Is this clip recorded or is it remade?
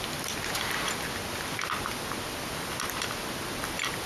recorded